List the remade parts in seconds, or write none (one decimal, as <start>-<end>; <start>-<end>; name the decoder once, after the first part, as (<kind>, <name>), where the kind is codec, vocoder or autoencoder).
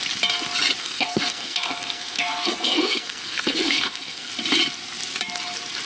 0.8-4.3 (codec, SNAC)